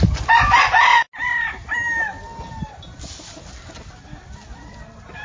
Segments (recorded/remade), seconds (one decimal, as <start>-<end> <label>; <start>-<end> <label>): 0.0-5.2 recorded